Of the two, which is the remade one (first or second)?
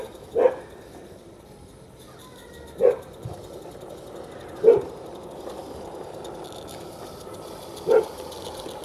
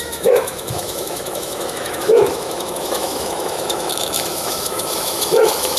second